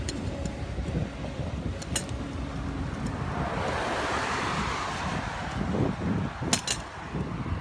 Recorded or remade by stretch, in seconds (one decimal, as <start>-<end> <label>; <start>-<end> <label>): 0.0-7.6 recorded